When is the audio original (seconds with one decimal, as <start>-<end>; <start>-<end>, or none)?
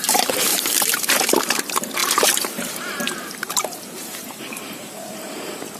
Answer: none